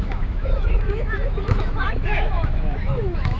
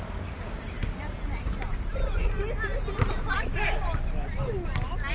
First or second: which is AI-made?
first